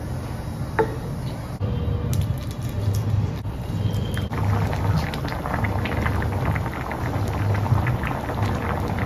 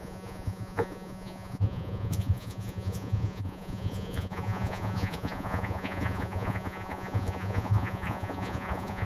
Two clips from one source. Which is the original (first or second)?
first